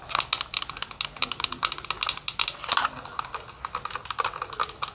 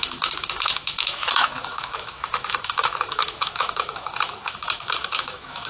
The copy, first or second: second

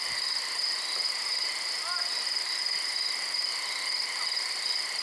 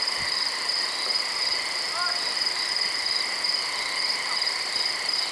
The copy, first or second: second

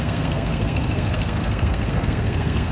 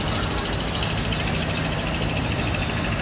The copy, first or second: first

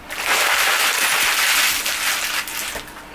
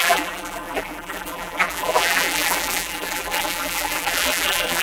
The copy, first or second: second